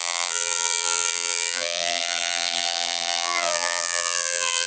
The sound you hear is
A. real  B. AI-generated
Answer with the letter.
B